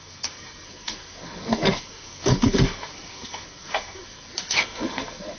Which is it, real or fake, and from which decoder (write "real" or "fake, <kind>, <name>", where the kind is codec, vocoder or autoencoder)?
fake, codec, SNAC